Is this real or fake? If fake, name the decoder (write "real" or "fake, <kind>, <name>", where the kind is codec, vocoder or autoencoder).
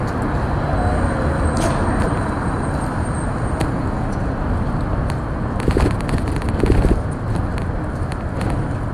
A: real